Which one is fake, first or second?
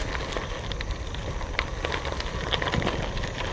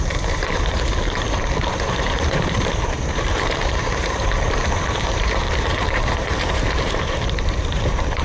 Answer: second